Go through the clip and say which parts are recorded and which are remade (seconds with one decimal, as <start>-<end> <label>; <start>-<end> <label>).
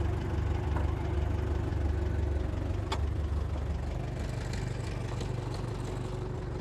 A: 0.0-6.6 recorded